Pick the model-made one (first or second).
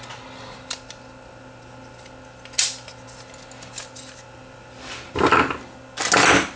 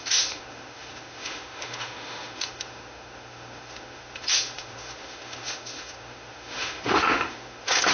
second